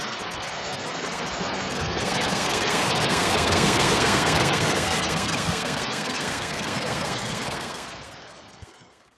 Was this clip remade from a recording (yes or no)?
yes